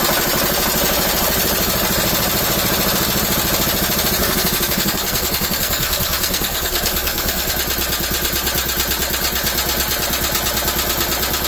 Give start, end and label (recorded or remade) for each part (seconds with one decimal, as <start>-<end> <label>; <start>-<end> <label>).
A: 0.0-4.2 recorded; 4.2-7.5 remade; 7.5-11.5 recorded